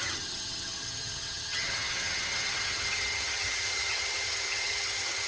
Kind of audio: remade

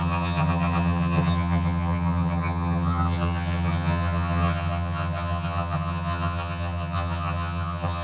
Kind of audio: remade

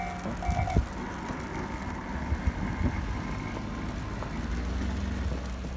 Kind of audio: recorded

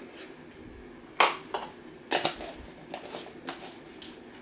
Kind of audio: recorded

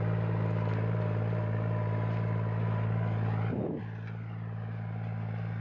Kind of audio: recorded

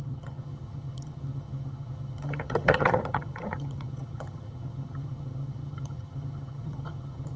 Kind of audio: remade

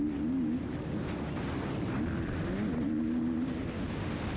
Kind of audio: recorded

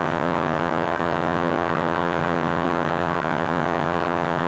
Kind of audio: remade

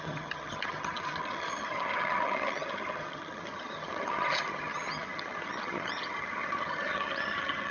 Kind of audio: remade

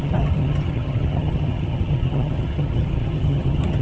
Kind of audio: remade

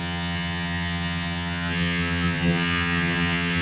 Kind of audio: remade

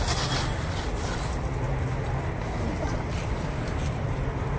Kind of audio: recorded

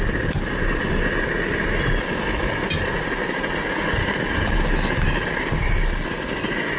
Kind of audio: recorded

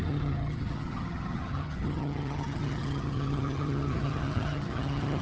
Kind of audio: remade